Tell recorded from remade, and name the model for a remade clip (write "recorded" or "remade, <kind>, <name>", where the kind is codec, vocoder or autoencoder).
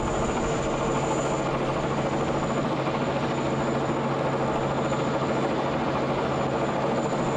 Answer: recorded